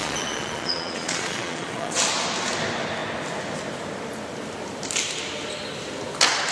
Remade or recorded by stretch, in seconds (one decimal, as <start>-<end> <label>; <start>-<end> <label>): 0.0-2.0 remade; 2.0-6.5 recorded